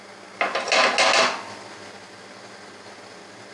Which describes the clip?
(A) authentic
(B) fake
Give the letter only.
A